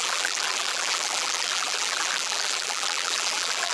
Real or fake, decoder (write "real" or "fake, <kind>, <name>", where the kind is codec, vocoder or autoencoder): fake, vocoder, BigVGAN v2